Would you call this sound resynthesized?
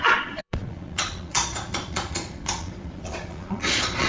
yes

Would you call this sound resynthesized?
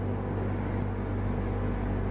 no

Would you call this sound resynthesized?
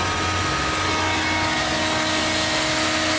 no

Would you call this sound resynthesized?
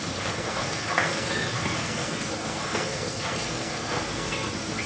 yes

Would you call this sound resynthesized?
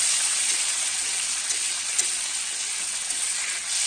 yes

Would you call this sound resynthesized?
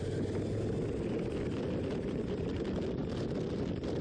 no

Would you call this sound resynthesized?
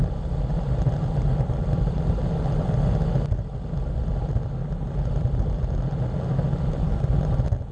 no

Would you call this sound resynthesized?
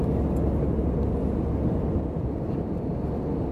no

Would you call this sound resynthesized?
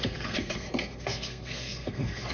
yes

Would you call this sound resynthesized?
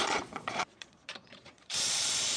yes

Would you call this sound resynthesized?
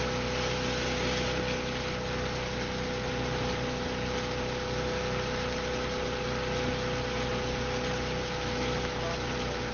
no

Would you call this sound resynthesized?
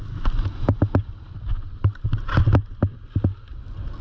no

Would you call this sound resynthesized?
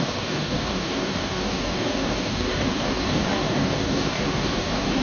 yes